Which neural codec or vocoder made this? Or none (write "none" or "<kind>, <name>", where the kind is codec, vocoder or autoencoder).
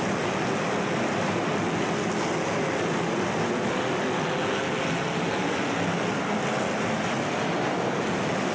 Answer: none